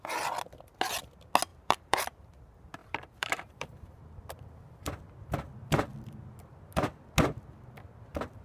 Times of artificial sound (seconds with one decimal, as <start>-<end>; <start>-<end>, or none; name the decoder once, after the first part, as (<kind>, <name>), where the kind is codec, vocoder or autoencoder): 1.5-2.4 (vocoder, BigVGAN v2); 2.8-3.9